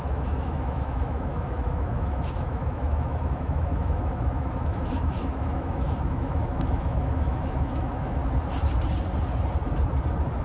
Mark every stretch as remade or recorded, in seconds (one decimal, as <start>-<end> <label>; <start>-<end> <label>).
0.0-8.2 remade; 8.2-10.4 recorded

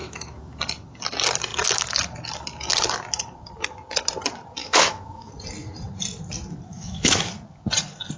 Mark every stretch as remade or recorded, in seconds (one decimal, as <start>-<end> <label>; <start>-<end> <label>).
0.0-0.6 remade; 0.6-4.6 recorded; 4.6-5.3 remade; 5.3-6.7 recorded; 6.7-7.3 remade; 7.3-8.2 recorded

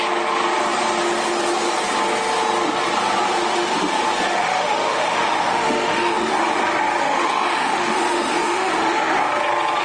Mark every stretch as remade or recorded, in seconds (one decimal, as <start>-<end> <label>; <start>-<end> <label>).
0.0-4.4 recorded; 4.4-6.3 remade; 6.3-7.0 recorded; 7.0-9.2 remade; 9.2-9.8 recorded

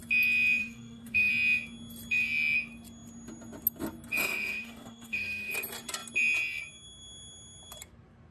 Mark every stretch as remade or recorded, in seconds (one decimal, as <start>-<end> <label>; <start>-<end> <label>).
0.0-0.6 recorded; 0.6-1.3 remade; 1.3-4.2 recorded; 4.2-5.5 remade; 5.5-8.3 recorded

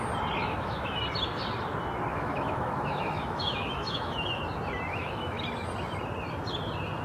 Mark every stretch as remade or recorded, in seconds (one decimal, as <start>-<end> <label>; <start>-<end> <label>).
0.0-0.4 recorded; 0.4-1.0 remade; 1.0-2.1 recorded; 2.1-4.4 remade; 4.4-4.9 recorded; 4.9-5.4 remade; 5.4-7.0 recorded

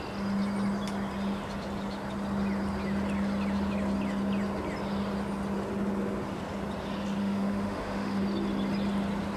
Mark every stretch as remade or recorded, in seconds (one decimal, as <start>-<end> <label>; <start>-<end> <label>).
0.0-7.2 recorded; 7.2-8.2 remade; 8.2-9.4 recorded

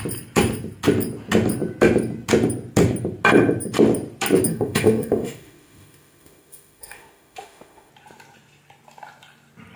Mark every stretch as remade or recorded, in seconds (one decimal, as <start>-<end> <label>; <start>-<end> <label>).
0.0-4.5 recorded; 4.5-7.9 remade; 7.9-9.8 recorded